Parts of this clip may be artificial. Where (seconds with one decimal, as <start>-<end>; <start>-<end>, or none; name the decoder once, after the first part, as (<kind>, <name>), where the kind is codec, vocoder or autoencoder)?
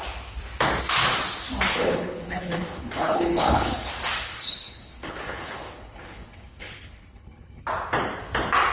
1.7-3.9 (codec, HILCodec); 4.3-7.6